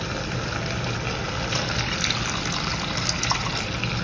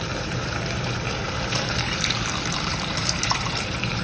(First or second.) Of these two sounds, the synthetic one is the second